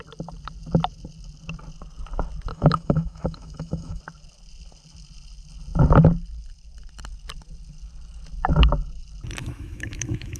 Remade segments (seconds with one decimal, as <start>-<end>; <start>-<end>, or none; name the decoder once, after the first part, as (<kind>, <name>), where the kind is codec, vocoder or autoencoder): 2.5-4.0 (autoencoder, DAC-VAE); 9.4-10.4